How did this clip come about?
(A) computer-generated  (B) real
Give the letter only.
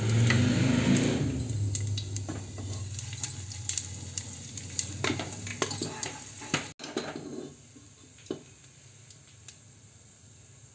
B